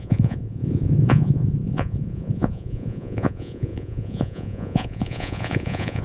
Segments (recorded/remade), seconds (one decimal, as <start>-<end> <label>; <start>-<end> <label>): 0.0-6.0 remade